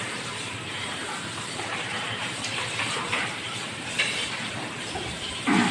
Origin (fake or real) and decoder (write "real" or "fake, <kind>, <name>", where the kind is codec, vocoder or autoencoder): fake, vocoder, BigVGAN v2